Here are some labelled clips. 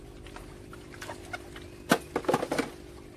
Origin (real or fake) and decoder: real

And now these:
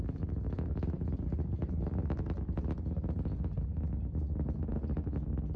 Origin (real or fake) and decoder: real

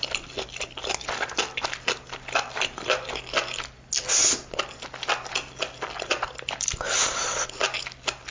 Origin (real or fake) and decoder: real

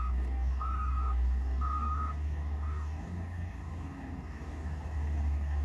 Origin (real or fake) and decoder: fake, codec, DAC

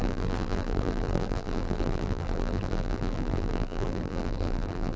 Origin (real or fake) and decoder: fake, vocoder, BigVGAN v2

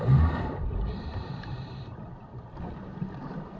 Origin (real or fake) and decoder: fake, vocoder, BigVGAN v2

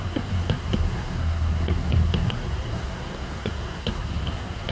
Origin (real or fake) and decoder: fake, codec, SNAC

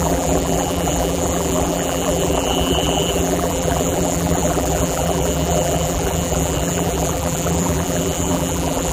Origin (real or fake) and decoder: fake, vocoder, BigVGAN v2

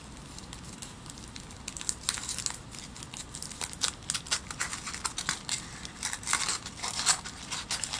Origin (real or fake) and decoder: real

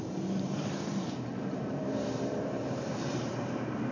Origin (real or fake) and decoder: fake, vocoder, BigVGAN v2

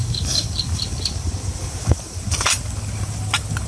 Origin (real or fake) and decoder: real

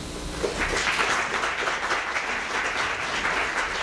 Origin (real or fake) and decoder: real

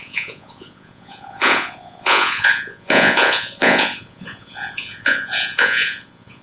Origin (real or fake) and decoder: fake, vocoder, Vocos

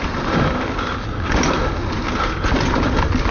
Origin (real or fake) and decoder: real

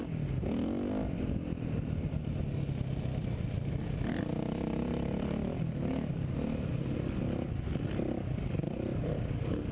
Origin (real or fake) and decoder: real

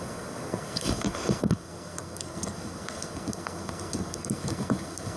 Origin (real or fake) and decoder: fake, codec, SNAC